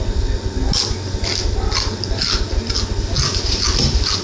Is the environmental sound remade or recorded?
recorded